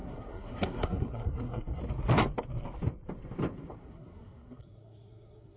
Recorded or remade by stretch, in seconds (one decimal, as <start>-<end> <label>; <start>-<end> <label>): 0.0-1.8 remade; 1.8-3.8 recorded; 3.8-5.6 remade